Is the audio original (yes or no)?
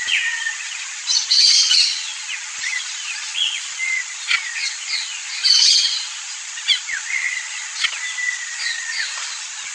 no